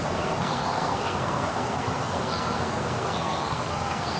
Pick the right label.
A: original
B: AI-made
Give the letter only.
B